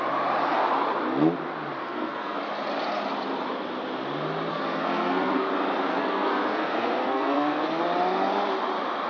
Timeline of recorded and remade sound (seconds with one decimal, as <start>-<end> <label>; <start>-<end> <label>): 0.0-1.8 recorded; 1.8-2.4 remade; 2.4-4.5 recorded; 4.5-5.5 remade; 5.5-5.9 recorded; 5.9-7.8 remade; 7.8-9.1 recorded